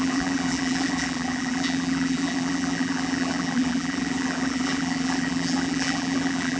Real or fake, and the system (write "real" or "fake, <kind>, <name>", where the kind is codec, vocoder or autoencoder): fake, vocoder, BigVGAN v2